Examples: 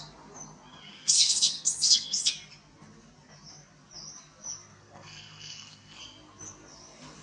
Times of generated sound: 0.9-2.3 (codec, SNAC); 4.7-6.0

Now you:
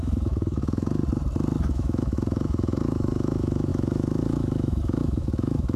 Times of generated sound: 0.0-1.0 (autoencoder, DAC-VAE); 1.7-5.8

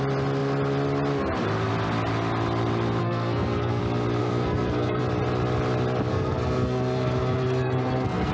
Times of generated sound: 3.0-3.8 (codec, SNAC); 4.2-5.0; 6.1-8.3

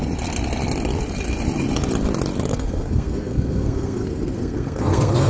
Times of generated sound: 2.5-5.3 (codec, SNAC)

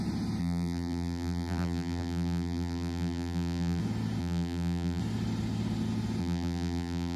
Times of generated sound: 0.4-3.8 (vocoder, BigVGAN v2); 4.2-5.0; 6.2-7.2